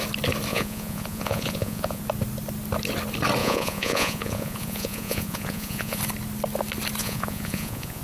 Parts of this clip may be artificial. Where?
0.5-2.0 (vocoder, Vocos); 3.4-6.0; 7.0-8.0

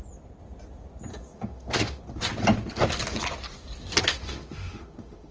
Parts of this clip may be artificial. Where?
1.1-2.0 (autoencoder, DAC-VAE); 4.1-5.3